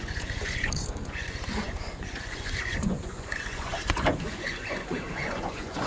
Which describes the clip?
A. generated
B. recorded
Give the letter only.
A